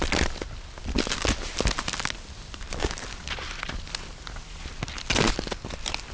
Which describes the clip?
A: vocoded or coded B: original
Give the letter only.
B